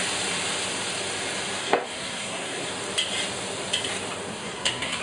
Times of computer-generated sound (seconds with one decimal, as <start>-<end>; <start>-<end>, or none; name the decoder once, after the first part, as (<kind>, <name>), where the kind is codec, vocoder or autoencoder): 1.6-2.7 (codec, SNAC); 4.3-5.0